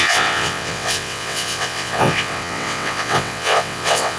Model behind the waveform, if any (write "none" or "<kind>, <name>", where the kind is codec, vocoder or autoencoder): vocoder, WaveNeXt